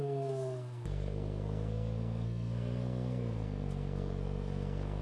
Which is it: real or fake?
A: fake